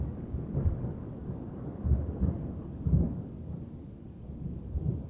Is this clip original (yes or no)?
no